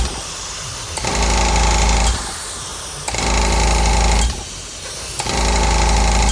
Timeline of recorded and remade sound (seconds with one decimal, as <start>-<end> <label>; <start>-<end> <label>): 0.0-6.3 recorded